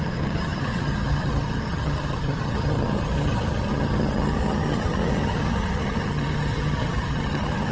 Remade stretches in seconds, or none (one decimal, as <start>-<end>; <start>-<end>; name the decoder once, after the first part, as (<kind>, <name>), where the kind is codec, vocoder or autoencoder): 0.0-7.7 (vocoder, HiFi-GAN)